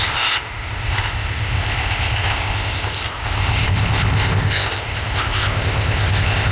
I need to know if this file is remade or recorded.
remade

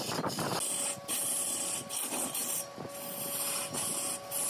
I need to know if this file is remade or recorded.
recorded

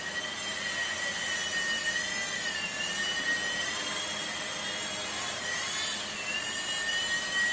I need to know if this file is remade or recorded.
recorded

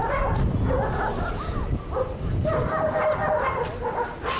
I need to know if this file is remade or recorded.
recorded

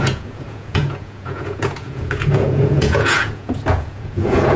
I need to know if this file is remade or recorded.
remade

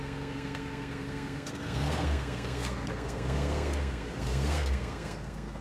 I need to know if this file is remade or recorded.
remade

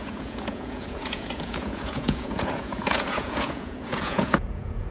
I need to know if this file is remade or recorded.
remade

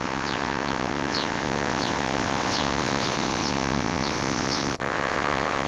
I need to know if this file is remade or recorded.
remade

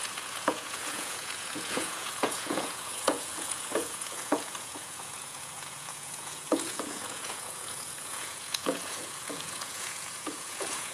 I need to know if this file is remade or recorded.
remade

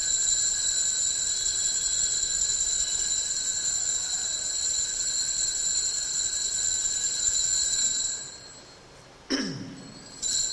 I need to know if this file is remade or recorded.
recorded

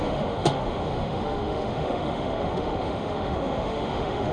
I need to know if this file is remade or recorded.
remade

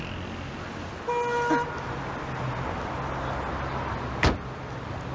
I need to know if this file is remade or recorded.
recorded